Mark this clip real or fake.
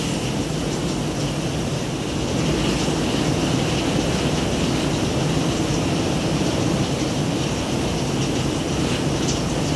real